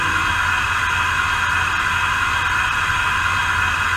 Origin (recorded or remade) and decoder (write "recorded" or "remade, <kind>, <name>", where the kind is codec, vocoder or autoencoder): recorded